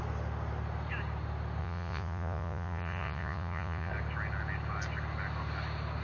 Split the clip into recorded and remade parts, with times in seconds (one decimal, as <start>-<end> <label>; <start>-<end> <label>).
0.0-1.6 recorded; 1.6-3.9 remade; 3.9-6.0 recorded